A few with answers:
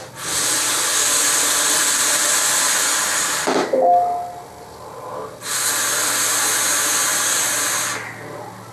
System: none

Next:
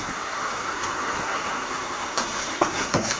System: codec, SNAC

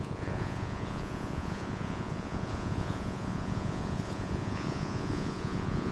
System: vocoder, Vocos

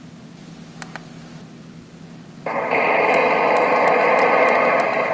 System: none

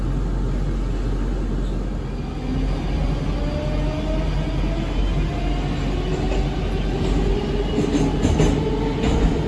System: none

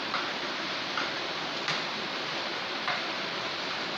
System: vocoder, BigVGAN v2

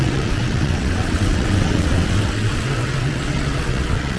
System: vocoder, WaveNeXt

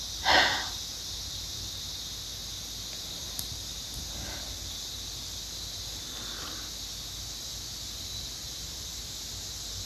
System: none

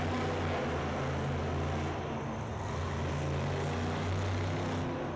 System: none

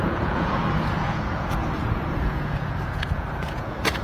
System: vocoder, Vocos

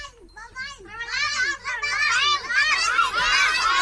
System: none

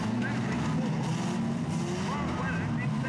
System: none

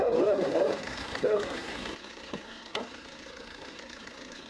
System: codec, SNAC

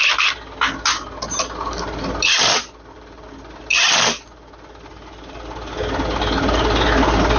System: none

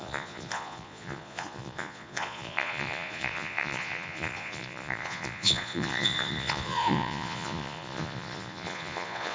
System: vocoder, Vocos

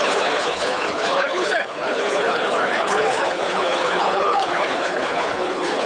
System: codec, HILCodec